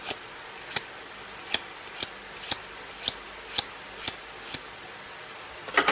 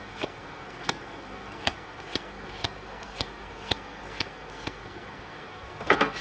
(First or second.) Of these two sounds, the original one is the first